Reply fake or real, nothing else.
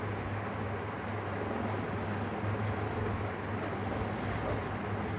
real